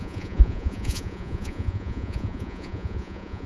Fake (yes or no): yes